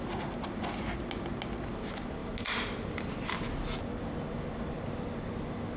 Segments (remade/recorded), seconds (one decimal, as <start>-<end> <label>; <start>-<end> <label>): 0.0-5.8 recorded